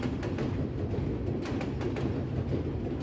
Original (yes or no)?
yes